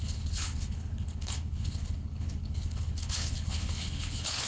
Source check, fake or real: fake